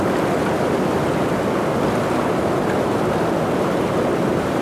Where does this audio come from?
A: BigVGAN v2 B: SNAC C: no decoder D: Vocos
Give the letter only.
A